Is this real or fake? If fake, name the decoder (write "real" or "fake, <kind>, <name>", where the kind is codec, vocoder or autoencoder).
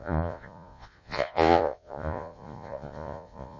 fake, vocoder, Vocos